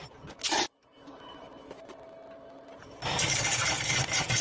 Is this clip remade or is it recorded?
recorded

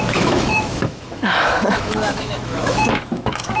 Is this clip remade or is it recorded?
remade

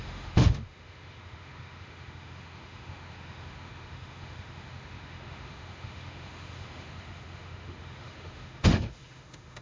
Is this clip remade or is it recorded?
remade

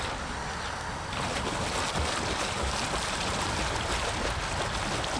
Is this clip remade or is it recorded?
recorded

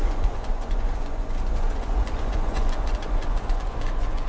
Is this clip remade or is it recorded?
remade